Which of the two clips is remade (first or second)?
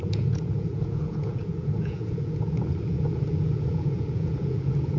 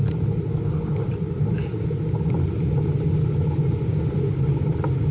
first